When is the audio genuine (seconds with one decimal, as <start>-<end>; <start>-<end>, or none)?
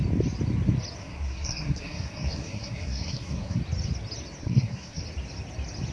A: 0.0-1.0; 3.6-4.4; 5.0-5.9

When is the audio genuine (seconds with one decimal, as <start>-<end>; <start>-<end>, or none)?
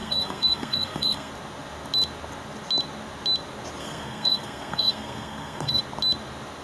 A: 1.3-3.8; 5.8-6.6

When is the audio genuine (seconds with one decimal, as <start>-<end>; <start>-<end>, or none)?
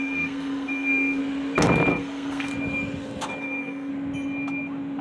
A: 1.2-1.9; 2.5-3.4; 3.9-5.0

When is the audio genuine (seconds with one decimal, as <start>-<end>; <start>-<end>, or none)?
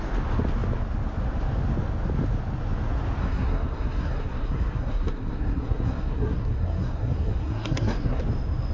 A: 0.0-3.2; 8.2-8.7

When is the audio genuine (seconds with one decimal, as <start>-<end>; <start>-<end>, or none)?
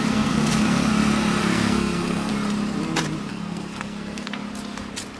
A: 0.9-1.4; 2.3-3.3; 4.4-5.2